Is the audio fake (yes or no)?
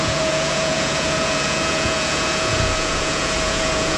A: yes